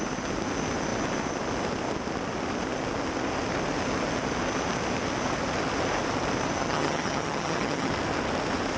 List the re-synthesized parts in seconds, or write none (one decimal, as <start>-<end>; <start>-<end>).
6.6-7.9